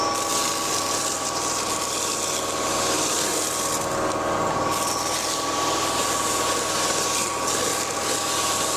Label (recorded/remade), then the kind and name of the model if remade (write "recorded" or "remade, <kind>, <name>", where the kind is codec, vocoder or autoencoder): recorded